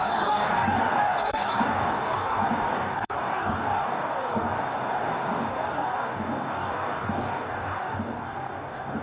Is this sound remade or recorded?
remade